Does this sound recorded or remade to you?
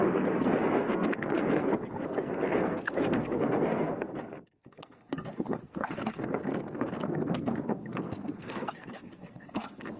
remade